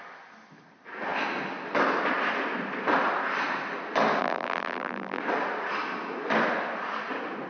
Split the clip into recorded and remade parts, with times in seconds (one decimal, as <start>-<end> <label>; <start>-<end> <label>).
0.0-4.2 recorded; 4.2-5.2 remade; 5.2-7.5 recorded